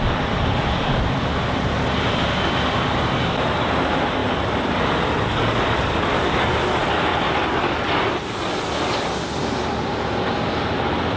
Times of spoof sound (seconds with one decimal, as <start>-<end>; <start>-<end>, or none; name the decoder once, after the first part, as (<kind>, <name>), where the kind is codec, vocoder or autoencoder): none